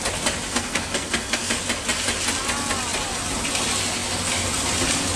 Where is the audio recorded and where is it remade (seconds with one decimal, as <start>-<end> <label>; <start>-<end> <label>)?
0.0-0.5 recorded; 0.5-1.5 remade; 1.5-5.2 recorded